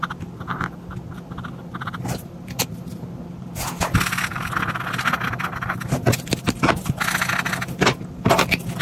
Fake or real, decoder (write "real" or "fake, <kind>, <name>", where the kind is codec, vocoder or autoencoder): real